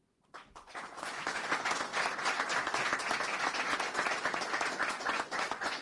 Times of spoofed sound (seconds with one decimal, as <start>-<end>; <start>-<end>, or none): 0.0-1.9; 4.9-5.8